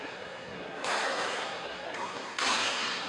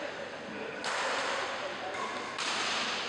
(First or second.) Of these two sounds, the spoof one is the first